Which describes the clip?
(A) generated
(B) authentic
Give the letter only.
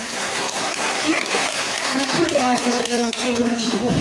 A